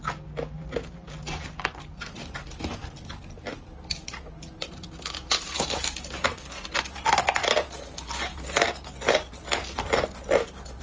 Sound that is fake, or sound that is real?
real